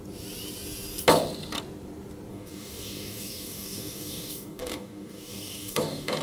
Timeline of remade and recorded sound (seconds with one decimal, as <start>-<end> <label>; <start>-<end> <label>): 0.0-2.3 recorded; 2.3-6.2 remade